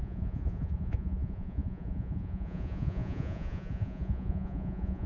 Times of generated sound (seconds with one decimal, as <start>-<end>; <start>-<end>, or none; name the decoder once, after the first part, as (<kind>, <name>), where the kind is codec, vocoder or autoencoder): 0.0-5.1 (vocoder, Vocos)

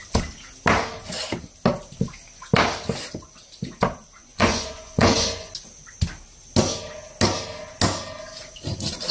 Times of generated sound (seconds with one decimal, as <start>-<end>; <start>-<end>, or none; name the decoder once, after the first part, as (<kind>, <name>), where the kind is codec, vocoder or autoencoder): 4.2-5.5 (vocoder, Vocos)

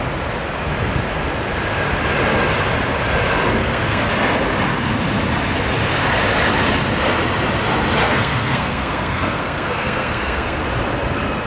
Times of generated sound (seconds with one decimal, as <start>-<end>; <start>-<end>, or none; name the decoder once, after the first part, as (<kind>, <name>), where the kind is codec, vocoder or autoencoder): 3.6-4.1 (codec, SNAC); 8.0-10.6

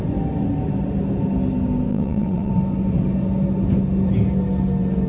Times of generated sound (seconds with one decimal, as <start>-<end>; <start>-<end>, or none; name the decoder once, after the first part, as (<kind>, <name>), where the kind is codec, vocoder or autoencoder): 1.9-2.5 (vocoder, WaveNeXt)

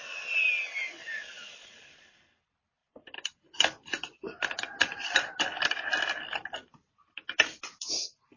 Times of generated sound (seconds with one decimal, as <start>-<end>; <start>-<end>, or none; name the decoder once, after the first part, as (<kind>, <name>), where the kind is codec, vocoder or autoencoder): 0.0-8.4 (vocoder, BigVGAN v2)

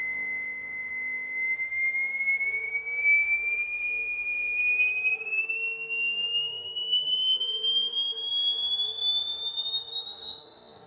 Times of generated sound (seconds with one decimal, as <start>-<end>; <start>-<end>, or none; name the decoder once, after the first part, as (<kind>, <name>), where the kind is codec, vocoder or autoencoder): 0.0-10.9 (autoencoder, DAC-VAE)